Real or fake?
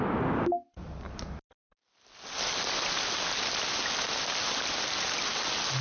real